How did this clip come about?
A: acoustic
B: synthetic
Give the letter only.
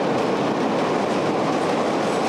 A